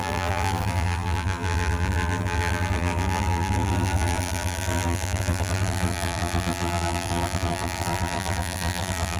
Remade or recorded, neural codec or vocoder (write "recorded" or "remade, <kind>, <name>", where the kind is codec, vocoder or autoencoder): remade, vocoder, BigVGAN v2